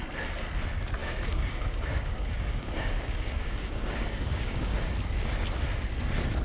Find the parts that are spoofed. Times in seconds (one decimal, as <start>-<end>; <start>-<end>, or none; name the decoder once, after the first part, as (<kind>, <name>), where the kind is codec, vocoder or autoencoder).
1.0-4.8 (codec, DAC)